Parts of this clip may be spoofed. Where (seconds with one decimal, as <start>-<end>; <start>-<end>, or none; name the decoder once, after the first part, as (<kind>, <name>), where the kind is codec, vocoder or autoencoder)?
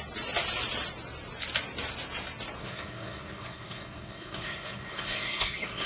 2.6-5.9 (codec, SNAC)